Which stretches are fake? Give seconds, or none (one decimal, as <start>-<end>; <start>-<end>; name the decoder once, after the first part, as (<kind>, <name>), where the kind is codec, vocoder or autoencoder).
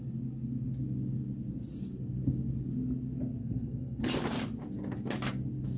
3.4-4.0 (codec, SNAC)